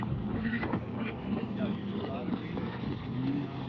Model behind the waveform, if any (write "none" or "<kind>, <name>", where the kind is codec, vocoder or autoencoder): codec, DAC